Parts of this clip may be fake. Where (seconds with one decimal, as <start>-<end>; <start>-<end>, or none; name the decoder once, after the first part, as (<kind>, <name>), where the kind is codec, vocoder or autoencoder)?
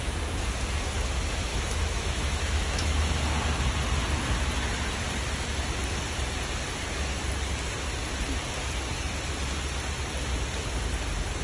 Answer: 1.5-3.3 (autoencoder, DAC-VAE)